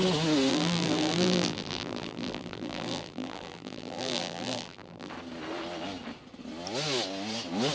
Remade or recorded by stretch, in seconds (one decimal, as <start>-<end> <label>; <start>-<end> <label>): 0.0-0.5 recorded; 0.5-5.1 remade; 5.1-7.7 recorded